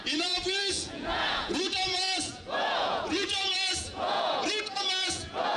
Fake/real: fake